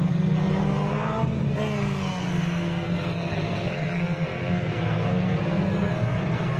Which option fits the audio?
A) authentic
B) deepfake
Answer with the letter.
B